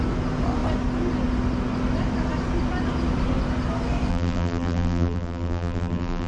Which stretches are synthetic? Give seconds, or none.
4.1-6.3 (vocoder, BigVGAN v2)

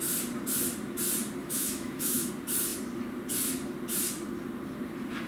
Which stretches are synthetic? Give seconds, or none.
1.4-2.3 (autoencoder, DAC-VAE)

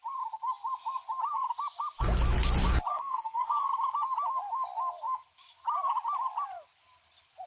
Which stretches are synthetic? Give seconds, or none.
2.9-3.7 (codec, SNAC)

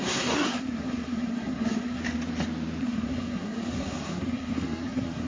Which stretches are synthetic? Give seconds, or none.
0.0-2.0 (codec, SNAC); 2.8-5.3

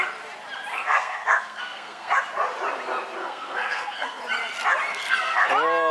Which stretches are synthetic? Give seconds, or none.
0.7-2.1 (codec, SNAC); 3.2-4.2; 4.9-5.5

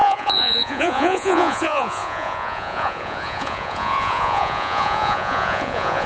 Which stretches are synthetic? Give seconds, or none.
0.0-6.1 (vocoder, Vocos)